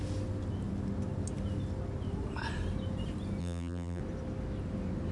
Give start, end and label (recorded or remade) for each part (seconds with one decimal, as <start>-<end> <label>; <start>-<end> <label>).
0.0-3.4 recorded; 3.4-4.0 remade; 4.0-5.1 recorded